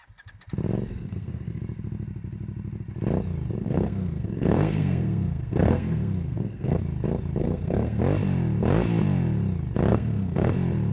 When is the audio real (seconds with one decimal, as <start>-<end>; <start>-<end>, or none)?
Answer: 0.0-0.9; 1.6-3.6; 6.8-7.4; 8.0-9.9; 10.5-10.9